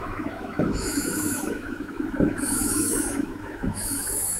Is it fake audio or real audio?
fake